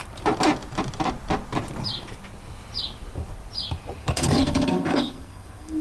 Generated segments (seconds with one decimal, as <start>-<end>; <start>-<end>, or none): 4.0-5.8